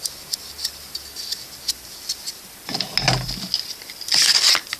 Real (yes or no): yes